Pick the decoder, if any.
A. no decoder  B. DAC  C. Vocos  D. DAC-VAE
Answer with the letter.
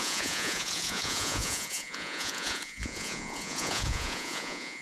C